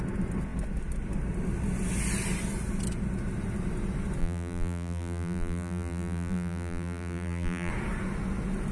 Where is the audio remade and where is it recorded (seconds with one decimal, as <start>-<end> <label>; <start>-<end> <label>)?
0.0-4.2 recorded; 4.2-7.7 remade; 7.7-8.7 recorded